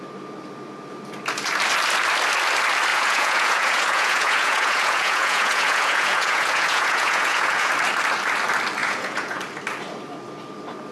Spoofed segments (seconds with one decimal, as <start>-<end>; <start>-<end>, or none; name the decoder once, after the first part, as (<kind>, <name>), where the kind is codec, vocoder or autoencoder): 2.9-7.7 (vocoder, Vocos); 8.8-9.4